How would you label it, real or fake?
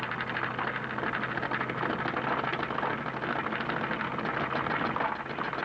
real